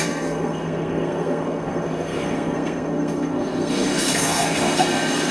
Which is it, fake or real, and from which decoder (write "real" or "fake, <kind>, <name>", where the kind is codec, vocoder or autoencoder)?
fake, codec, SNAC